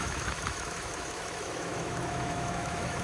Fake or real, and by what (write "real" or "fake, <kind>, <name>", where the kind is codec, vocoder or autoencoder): fake, autoencoder, DAC-VAE